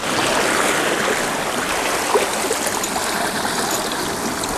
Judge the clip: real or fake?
real